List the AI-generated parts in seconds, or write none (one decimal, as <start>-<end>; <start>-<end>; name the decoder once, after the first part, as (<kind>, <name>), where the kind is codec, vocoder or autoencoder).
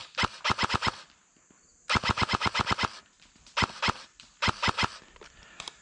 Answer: 0.0-1.0 (vocoder, BigVGAN v2); 1.7-5.2